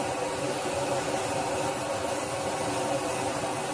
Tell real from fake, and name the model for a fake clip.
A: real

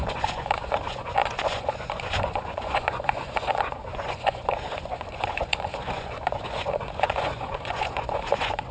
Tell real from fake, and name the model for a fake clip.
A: fake, vocoder, Vocos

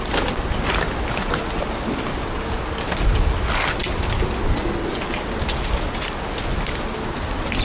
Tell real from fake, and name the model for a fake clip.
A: real